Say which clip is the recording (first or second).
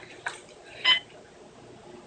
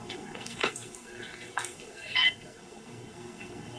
first